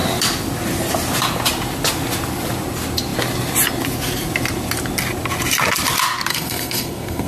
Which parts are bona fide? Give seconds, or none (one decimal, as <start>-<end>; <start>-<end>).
0.0-6.3